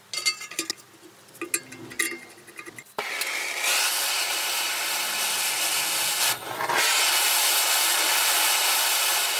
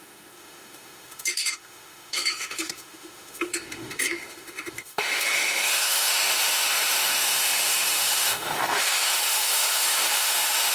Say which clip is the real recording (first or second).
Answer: first